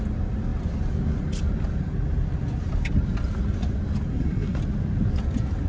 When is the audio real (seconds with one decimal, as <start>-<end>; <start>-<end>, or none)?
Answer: 0.0-4.1; 4.6-5.7